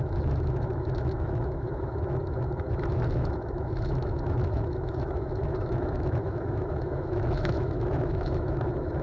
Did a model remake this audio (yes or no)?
yes